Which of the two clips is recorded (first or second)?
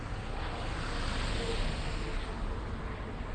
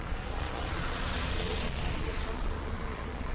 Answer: first